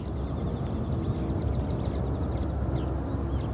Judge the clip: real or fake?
real